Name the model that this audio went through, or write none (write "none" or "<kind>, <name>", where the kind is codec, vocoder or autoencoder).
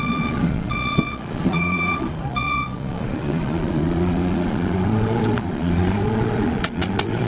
vocoder, Vocos